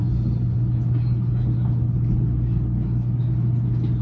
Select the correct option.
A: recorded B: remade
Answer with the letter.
A